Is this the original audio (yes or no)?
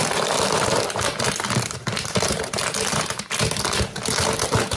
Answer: yes